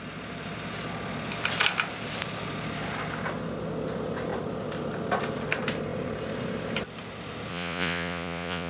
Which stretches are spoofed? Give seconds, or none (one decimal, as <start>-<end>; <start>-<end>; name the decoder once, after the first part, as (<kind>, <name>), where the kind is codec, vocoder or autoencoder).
7.5-8.7 (vocoder, Vocos)